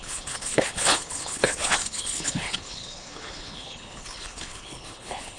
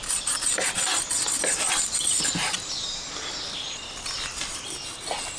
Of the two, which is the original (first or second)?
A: second